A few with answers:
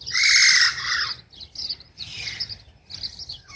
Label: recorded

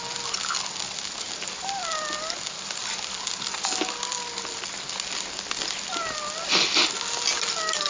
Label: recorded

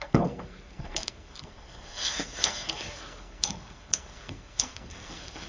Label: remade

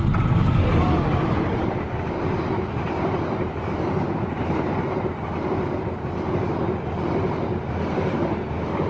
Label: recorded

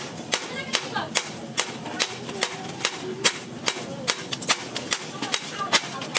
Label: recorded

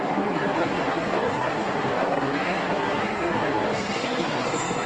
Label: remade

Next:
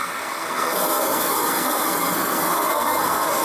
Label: remade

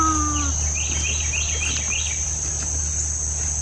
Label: recorded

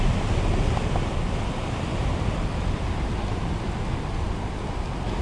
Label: recorded